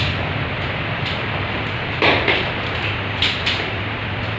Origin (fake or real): real